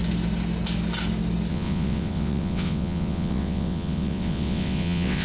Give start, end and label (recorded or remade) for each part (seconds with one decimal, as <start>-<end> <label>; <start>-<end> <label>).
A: 0.0-1.5 recorded; 1.5-5.2 remade

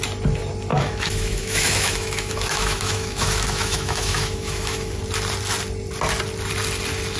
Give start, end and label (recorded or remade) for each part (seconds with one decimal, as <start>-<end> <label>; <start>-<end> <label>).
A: 0.0-0.7 recorded; 0.7-5.0 remade; 5.0-7.2 recorded

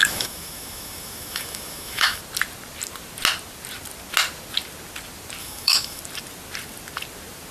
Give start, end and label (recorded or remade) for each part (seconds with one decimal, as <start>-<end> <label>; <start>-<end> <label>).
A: 0.0-2.2 remade; 2.2-5.4 recorded; 5.4-6.0 remade; 6.0-7.5 recorded

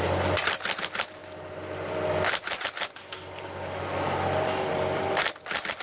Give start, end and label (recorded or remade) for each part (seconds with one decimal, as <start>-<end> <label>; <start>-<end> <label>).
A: 0.0-5.8 recorded

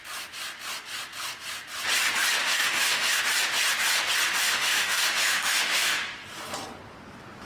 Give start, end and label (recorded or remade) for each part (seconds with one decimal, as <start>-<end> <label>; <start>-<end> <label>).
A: 0.0-2.4 recorded; 2.4-3.2 remade; 3.2-4.4 recorded; 4.4-6.0 remade; 6.0-7.5 recorded